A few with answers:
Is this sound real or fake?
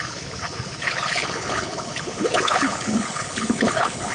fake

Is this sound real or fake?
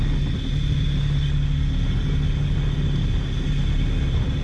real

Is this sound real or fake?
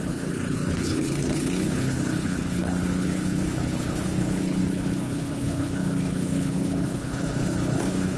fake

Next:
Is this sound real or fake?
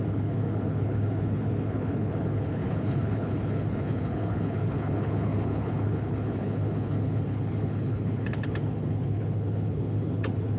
fake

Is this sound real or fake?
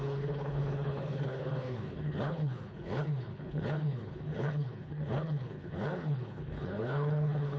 fake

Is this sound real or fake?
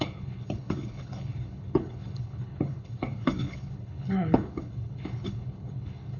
fake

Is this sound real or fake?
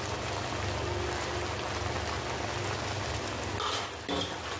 real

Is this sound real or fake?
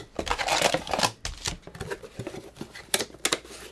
real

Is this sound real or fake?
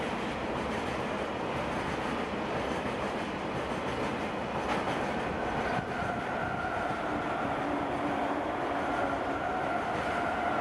real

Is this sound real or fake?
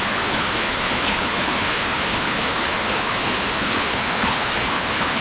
fake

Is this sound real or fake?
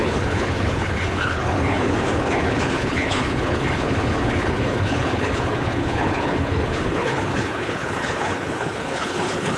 fake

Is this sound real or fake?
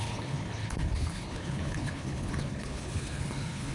fake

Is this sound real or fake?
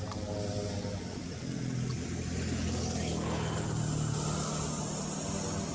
real